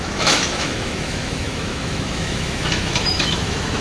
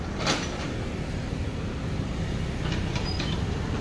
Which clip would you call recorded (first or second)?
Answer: second